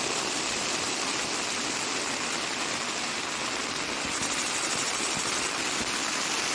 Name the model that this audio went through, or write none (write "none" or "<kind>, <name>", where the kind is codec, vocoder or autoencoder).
none